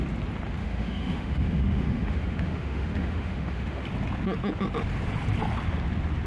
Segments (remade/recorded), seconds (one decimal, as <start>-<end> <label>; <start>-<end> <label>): 0.0-0.6 recorded; 0.6-3.8 remade; 3.8-6.3 recorded